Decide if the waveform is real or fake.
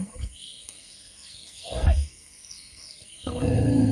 fake